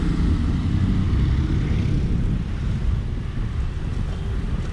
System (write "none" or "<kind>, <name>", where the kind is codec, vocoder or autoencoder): none